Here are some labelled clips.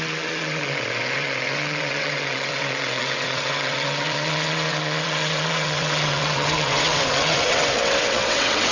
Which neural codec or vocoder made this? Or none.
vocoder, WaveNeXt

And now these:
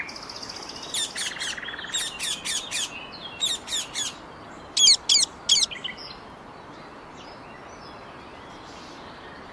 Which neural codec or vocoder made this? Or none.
none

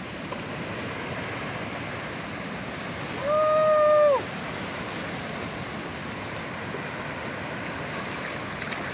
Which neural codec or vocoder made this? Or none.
none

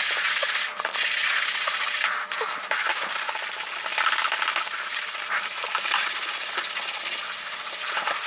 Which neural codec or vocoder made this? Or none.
none